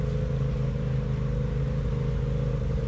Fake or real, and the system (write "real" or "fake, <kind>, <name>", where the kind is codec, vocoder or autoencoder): real